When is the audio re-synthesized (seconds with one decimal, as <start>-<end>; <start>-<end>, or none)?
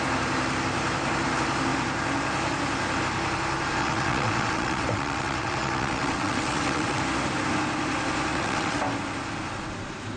3.8-7.0; 8.3-8.8